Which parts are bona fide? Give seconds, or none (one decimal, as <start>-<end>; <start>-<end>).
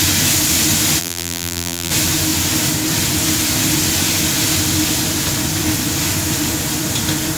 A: 0.0-1.0; 1.9-7.4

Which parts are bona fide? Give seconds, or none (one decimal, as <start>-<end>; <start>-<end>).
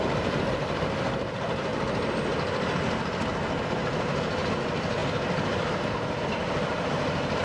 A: 1.7-3.6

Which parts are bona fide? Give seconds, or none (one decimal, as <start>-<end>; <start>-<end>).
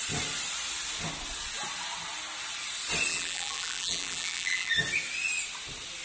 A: 0.0-3.1; 4.7-6.0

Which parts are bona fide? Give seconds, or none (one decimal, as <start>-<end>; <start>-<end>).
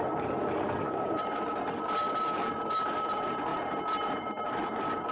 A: 1.5-2.2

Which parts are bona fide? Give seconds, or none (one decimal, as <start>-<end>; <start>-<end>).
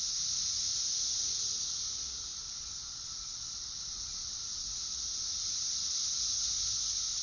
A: 0.0-7.2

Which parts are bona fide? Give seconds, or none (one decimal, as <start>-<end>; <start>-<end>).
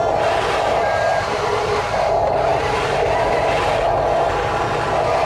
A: 0.0-1.1; 1.7-2.5; 3.8-5.3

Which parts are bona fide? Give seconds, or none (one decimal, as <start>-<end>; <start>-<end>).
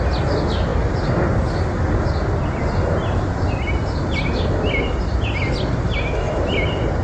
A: 0.0-7.0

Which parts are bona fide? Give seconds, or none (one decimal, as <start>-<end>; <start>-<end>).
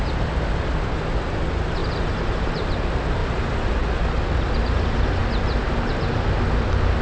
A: 0.0-1.8; 2.7-3.2; 3.7-7.0